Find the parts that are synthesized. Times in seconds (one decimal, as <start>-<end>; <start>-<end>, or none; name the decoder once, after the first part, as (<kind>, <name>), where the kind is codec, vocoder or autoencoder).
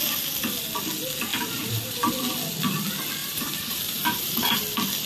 1.3-2.1 (vocoder, BigVGAN v2); 3.2-4.6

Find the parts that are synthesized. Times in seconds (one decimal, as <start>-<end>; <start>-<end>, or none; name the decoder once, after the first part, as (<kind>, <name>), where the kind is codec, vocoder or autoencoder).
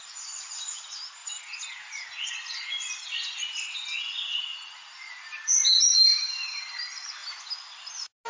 none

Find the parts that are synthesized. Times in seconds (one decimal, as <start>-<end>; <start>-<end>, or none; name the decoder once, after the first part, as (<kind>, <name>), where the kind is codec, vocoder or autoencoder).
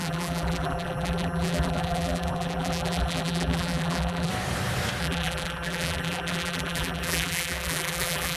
0.0-4.3 (vocoder, BigVGAN v2); 5.0-8.4